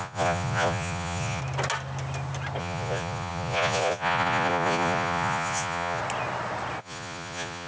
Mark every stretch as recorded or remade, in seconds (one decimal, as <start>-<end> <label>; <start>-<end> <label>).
0.0-1.4 remade; 1.4-2.6 recorded; 2.6-6.0 remade; 6.0-6.8 recorded; 6.8-7.7 remade